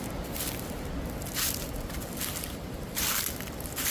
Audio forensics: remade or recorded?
recorded